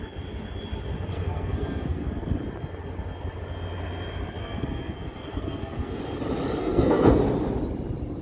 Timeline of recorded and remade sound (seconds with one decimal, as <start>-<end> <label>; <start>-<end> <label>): 0.0-1.1 recorded; 1.1-2.4 remade; 2.4-4.4 recorded; 4.4-6.0 remade; 6.0-6.6 recorded; 6.6-7.1 remade; 7.1-8.2 recorded